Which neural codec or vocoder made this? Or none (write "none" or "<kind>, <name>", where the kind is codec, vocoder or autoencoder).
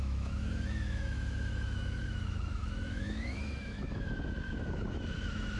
autoencoder, DAC-VAE